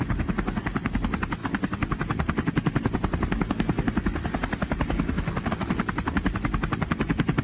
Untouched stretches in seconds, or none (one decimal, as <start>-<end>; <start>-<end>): 0.0-7.4